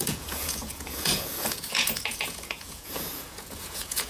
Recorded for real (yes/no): no